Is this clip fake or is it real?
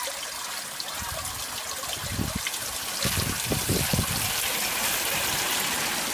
real